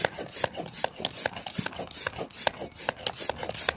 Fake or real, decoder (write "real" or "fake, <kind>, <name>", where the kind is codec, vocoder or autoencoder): real